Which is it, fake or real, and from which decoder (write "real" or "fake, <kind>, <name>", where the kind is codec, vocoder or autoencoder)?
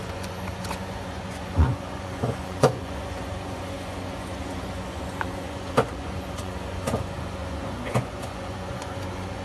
fake, vocoder, Vocos